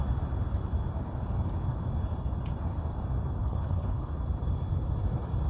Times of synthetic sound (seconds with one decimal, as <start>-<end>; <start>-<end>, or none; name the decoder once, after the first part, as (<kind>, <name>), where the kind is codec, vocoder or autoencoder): 3.4-4.1 (codec, HILCodec)